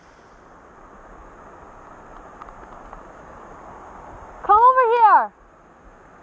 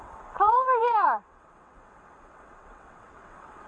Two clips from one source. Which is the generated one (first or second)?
second